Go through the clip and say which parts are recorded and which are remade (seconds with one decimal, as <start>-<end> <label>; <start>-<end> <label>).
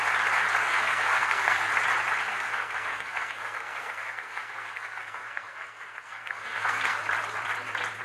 0.0-0.6 recorded; 0.6-1.7 remade; 1.7-2.3 recorded; 2.3-7.0 remade; 7.0-8.0 recorded